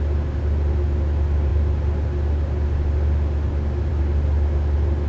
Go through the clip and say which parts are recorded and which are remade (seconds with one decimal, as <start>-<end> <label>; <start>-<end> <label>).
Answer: 0.0-5.1 recorded